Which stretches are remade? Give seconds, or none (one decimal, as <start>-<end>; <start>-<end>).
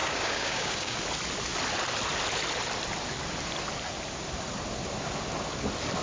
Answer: 0.0-1.0